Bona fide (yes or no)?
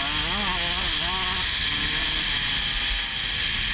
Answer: yes